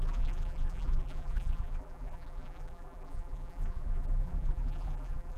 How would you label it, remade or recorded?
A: remade